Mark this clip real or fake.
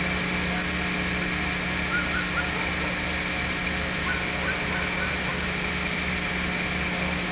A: real